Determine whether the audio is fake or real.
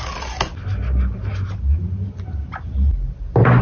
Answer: real